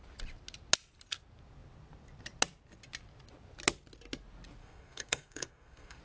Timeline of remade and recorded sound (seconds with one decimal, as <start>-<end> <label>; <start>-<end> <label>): 0.0-4.6 recorded; 4.6-6.0 remade